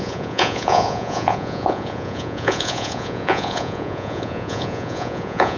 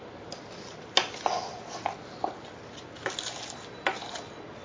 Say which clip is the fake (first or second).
first